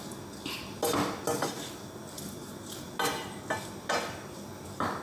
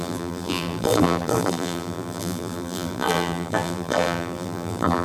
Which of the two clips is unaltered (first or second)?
first